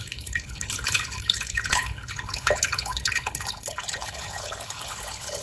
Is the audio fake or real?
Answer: fake